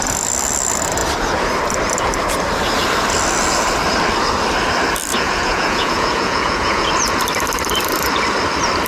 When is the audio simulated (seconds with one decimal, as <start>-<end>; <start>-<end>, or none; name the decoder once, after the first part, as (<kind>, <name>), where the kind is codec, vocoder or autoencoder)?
5.1-6.9 (vocoder, Vocos)